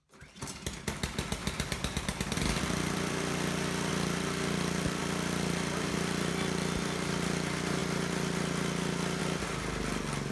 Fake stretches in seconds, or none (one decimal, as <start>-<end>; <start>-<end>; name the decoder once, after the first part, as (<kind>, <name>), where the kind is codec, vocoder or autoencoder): 1.4-3.9 (vocoder, BigVGAN v2); 5.0-6.3